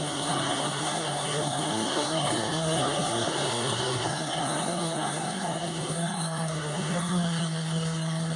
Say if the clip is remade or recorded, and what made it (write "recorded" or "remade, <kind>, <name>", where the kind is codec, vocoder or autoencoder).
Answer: remade, codec, SNAC